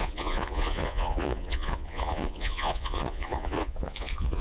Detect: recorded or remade remade